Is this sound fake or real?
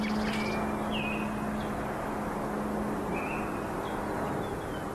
real